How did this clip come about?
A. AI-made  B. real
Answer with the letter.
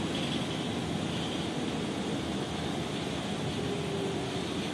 B